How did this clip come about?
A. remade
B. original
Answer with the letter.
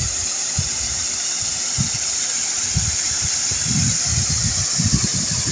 B